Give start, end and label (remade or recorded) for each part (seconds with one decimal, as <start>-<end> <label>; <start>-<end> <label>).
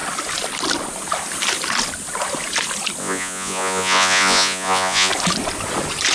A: 0.0-3.0 recorded; 3.0-5.1 remade; 5.1-6.1 recorded